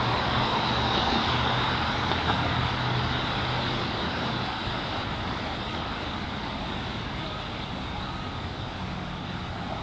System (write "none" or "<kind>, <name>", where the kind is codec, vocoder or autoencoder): codec, DAC